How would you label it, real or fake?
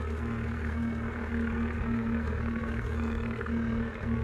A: fake